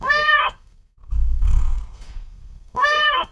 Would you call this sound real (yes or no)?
no